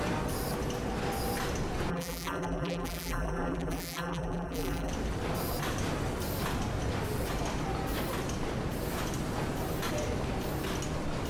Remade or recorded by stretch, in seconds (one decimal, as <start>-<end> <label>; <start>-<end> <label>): 0.0-1.9 recorded; 1.9-4.9 remade; 4.9-11.3 recorded